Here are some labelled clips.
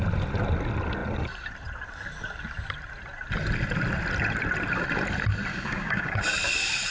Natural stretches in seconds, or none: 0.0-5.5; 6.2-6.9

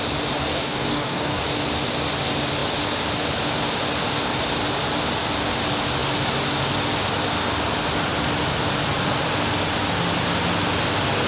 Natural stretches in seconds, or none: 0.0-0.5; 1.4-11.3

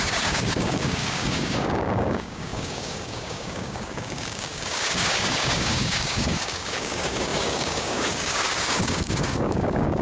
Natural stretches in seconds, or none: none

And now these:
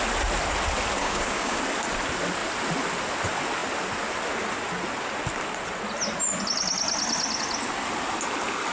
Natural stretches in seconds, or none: 0.0-1.0; 1.6-8.7